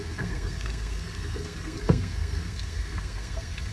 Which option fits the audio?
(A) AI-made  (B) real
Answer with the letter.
A